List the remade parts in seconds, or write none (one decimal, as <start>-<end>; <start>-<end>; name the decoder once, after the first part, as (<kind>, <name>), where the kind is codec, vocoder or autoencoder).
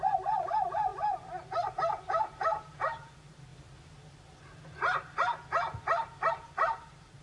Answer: 0.0-3.5 (vocoder, BigVGAN v2); 6.3-7.2